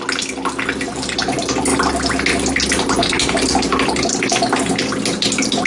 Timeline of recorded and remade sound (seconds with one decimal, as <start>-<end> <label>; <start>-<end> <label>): 0.0-5.7 recorded